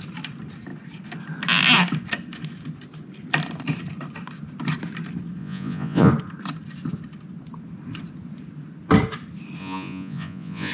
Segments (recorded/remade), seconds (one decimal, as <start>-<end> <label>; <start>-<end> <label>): 0.0-5.4 recorded; 5.4-6.1 remade; 6.1-9.6 recorded; 9.6-10.7 remade

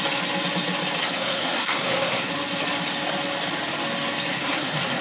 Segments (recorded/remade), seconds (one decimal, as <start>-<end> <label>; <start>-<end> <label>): 0.0-1.0 recorded; 1.0-2.3 remade; 2.3-4.3 recorded; 4.3-5.0 remade